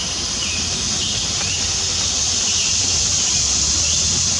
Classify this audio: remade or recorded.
recorded